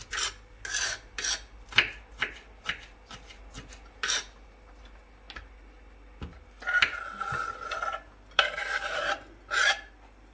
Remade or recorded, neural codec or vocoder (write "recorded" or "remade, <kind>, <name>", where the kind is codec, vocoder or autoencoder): recorded